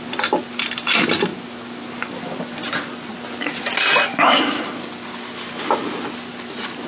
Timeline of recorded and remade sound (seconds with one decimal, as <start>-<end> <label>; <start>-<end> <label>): 0.0-6.9 recorded